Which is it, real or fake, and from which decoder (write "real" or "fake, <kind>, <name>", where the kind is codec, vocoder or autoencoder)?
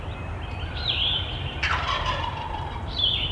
fake, vocoder, BigVGAN v2